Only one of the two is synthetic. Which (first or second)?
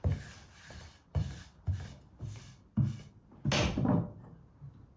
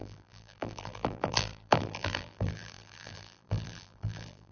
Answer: second